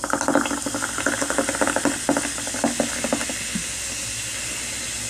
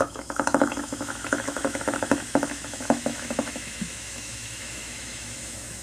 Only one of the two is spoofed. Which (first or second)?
second